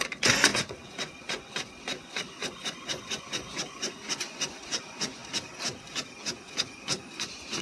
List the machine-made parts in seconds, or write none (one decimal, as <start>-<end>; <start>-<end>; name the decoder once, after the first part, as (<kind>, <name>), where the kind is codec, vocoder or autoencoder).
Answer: 0.0-5.2 (vocoder, Vocos); 6.2-7.6